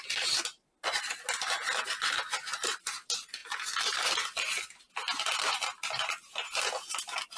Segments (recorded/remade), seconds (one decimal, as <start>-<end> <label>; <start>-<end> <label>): 0.0-7.4 recorded